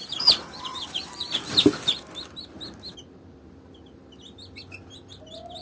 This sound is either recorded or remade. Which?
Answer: recorded